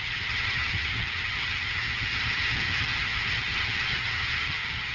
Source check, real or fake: fake